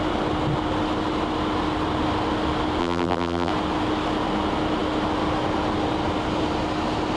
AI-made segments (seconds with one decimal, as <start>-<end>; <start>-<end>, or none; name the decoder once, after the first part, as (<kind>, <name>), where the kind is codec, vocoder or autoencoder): 2.8-3.5 (vocoder, BigVGAN v2)